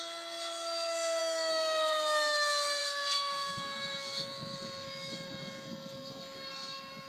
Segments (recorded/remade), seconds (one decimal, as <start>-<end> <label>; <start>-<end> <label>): 0.0-7.1 remade